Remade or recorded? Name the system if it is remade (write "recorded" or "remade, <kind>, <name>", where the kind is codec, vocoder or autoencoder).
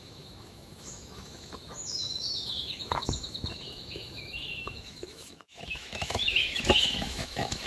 remade, autoencoder, DAC-VAE